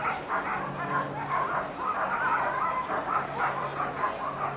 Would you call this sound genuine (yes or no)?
yes